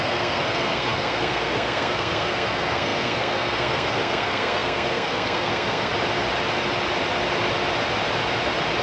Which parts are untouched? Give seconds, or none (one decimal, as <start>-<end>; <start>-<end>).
5.9-8.8